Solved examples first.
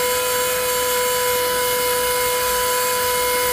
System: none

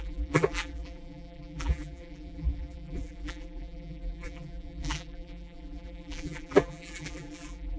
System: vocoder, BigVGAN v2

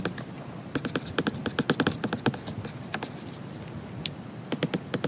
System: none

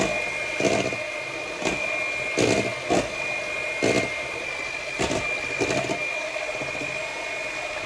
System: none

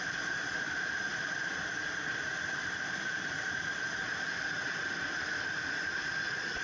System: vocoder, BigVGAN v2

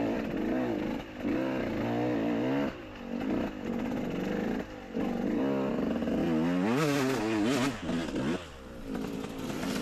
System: none